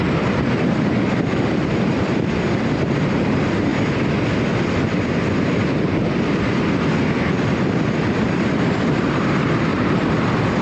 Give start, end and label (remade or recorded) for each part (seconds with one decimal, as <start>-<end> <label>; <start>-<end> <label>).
0.0-9.7 remade; 9.7-10.2 recorded; 10.2-10.6 remade